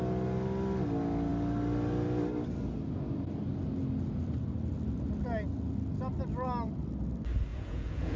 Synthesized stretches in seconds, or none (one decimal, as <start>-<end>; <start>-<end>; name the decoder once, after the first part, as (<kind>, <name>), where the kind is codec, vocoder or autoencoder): 7.5-8.2 (vocoder, Vocos)

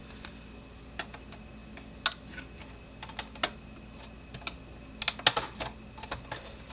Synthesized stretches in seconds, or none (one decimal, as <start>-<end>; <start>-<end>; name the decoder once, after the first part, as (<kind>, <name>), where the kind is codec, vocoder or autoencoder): none

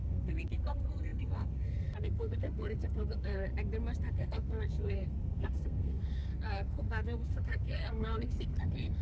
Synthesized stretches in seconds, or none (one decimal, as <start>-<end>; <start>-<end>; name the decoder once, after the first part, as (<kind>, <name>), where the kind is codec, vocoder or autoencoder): 0.0-3.5 (codec, SNAC); 4.1-9.0